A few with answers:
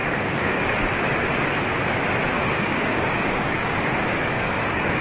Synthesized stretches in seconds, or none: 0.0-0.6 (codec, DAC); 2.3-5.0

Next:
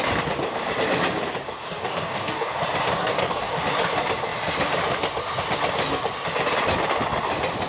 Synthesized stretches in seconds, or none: 1.6-2.6 (codec, DAC); 3.0-3.6

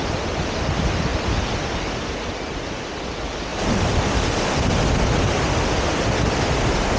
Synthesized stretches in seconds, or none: none